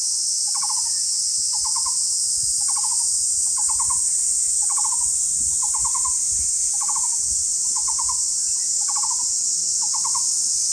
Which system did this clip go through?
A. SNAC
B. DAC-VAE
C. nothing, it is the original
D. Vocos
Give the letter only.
C